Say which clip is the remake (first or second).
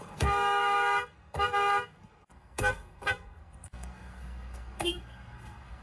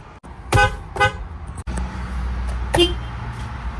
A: first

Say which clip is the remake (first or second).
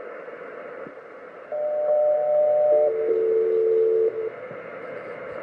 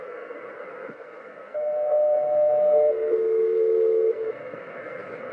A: second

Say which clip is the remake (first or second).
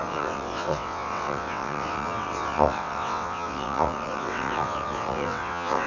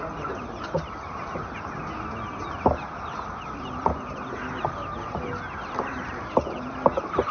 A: first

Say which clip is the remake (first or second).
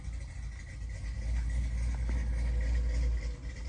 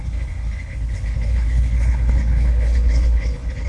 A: second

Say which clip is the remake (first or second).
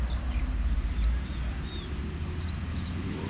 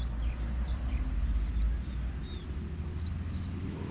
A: first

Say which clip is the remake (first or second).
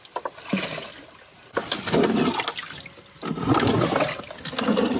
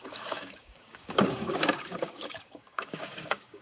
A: second